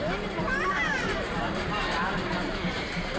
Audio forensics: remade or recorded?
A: remade